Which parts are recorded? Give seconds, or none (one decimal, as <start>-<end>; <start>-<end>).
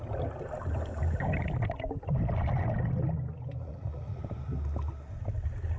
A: 0.0-3.6; 4.2-5.8